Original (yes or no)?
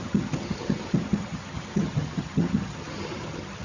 no